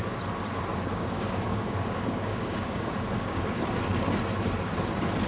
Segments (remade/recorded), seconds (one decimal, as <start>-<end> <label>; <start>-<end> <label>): 0.0-0.9 recorded; 0.9-3.5 remade; 3.5-5.3 recorded